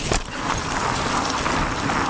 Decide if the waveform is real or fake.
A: real